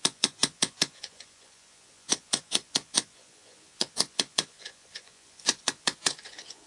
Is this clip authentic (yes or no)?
no